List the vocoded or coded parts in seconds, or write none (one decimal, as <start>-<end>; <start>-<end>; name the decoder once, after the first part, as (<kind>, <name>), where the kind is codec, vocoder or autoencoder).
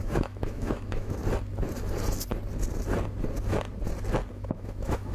0.0-1.2 (autoencoder, DAC-VAE); 4.3-5.1